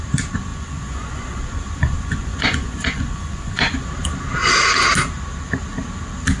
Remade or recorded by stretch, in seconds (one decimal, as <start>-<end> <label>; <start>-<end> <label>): 0.0-0.5 recorded; 0.5-3.9 remade; 3.9-6.4 recorded